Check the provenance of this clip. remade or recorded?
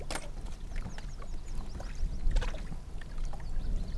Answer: recorded